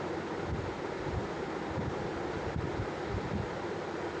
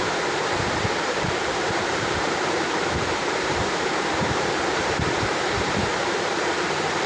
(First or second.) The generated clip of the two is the second